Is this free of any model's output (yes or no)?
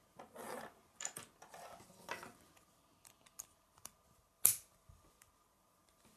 no